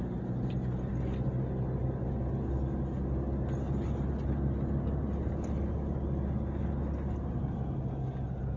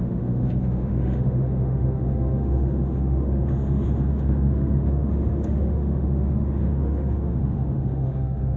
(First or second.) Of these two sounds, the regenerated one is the second